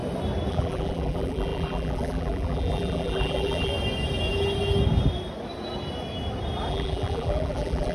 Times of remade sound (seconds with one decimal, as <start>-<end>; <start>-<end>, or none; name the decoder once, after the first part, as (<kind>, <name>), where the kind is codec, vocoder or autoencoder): 0.5-3.7 (vocoder, BigVGAN v2); 6.7-7.9